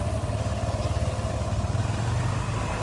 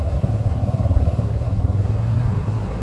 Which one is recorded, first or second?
first